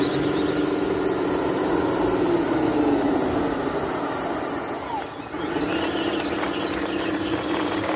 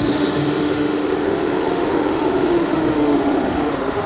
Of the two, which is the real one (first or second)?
first